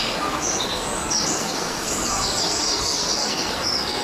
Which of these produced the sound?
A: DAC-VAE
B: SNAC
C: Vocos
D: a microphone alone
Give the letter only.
B